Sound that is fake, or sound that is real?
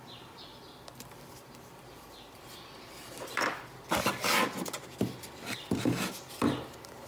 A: fake